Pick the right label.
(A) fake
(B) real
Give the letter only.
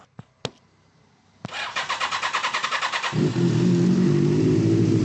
B